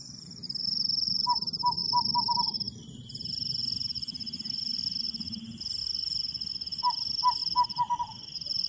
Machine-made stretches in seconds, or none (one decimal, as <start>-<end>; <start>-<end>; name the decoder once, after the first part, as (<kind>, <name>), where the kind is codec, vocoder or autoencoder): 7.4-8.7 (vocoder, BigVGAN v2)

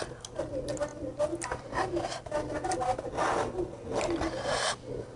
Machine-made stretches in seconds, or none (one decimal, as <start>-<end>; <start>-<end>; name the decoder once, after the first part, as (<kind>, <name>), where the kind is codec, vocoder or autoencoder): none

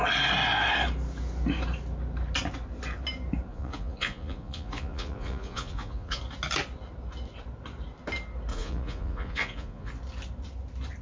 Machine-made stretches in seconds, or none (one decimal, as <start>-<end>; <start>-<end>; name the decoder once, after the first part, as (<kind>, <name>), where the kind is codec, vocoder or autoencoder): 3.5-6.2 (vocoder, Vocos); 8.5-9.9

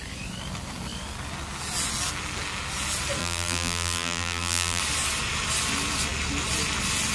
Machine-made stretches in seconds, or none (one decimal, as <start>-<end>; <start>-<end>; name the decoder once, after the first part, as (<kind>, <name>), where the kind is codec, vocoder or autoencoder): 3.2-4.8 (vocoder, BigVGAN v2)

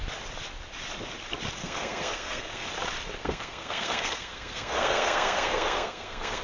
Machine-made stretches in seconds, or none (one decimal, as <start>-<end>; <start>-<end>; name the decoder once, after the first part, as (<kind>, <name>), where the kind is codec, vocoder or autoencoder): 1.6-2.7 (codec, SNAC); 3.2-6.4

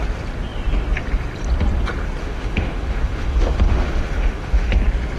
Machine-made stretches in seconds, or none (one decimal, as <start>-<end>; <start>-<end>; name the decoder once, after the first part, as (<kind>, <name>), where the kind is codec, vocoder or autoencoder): 2.2-4.8 (autoencoder, DAC-VAE)